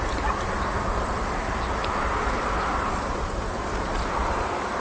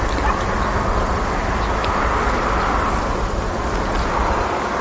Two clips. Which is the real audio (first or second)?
second